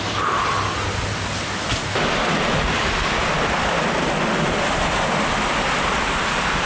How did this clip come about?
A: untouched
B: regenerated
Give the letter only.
A